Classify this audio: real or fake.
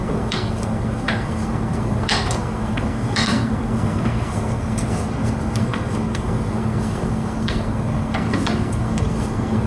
fake